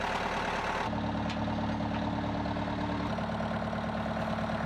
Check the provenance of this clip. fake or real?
real